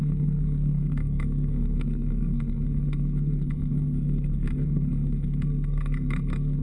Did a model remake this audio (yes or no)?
yes